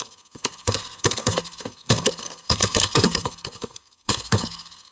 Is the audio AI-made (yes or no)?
yes